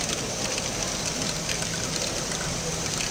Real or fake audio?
real